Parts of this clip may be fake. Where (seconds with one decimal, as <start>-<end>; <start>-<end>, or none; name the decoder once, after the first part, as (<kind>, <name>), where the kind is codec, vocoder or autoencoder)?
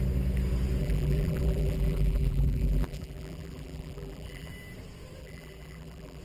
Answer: 0.8-4.5 (vocoder, BigVGAN v2); 5.2-6.2